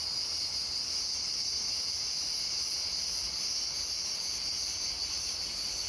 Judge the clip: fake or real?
real